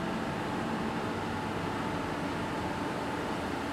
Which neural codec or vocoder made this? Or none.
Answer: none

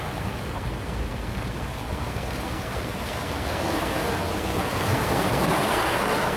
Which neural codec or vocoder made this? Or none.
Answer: codec, SNAC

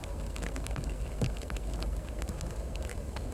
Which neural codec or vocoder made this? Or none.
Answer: codec, SNAC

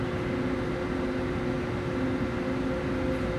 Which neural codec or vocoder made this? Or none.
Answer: none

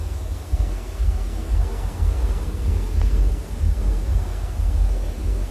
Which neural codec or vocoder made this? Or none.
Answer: codec, SNAC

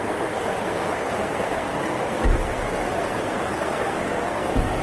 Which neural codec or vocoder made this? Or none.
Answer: codec, SNAC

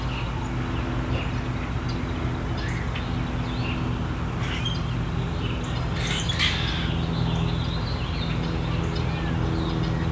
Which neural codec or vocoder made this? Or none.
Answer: none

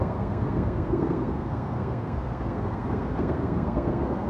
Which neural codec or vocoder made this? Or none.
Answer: codec, SNAC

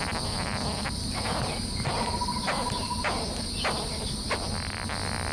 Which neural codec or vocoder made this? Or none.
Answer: none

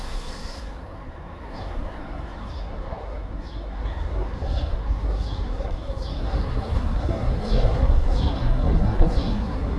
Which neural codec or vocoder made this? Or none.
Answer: codec, SNAC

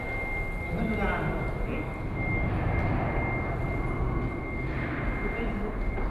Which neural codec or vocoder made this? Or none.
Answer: none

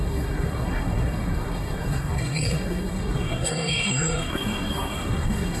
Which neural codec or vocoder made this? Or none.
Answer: codec, SNAC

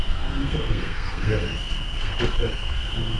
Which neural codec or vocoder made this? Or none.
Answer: codec, SNAC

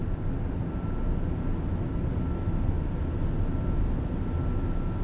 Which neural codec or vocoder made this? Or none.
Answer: none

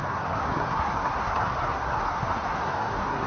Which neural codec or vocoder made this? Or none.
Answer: codec, SNAC